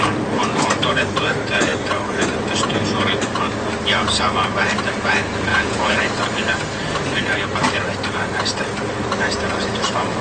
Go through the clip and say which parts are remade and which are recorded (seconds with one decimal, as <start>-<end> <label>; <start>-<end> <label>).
0.0-5.5 recorded; 5.5-6.0 remade; 6.0-10.2 recorded